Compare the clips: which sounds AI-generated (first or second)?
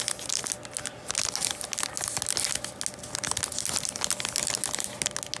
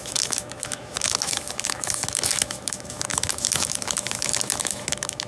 second